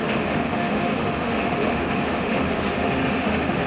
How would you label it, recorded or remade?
remade